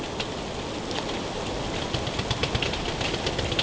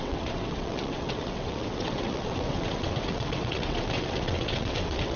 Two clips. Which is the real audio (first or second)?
first